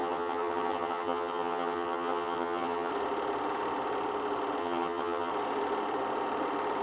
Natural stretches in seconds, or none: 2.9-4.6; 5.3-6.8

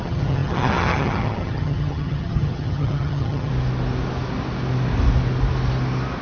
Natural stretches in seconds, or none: 3.5-6.2

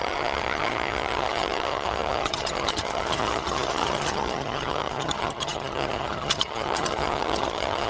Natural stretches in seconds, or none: none